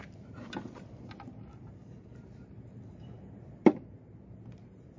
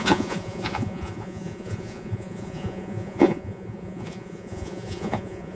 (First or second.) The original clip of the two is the first